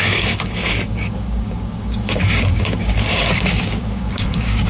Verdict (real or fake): fake